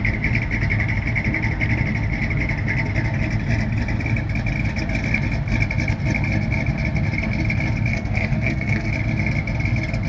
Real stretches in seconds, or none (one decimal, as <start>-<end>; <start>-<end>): 0.0-7.9; 8.9-10.1